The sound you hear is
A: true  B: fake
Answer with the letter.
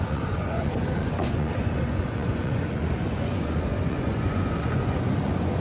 B